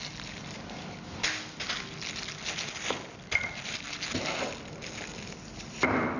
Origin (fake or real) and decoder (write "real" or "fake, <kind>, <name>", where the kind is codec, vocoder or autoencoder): real